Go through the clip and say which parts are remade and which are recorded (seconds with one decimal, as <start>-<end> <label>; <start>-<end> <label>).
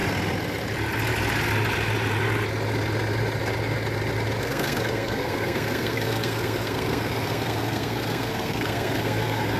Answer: 0.0-4.4 recorded; 4.4-9.6 remade